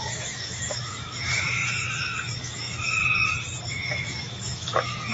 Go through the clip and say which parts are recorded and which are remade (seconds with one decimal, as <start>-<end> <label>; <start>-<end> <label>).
0.0-3.0 remade; 3.0-3.7 recorded; 3.7-5.1 remade